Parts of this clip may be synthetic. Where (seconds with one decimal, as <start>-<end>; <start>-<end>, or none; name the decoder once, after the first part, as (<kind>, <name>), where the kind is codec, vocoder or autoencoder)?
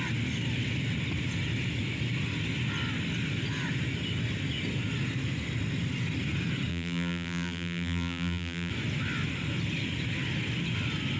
6.7-8.7 (vocoder, BigVGAN v2)